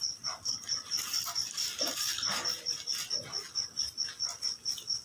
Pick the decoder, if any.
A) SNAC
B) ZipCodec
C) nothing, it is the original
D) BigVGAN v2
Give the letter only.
C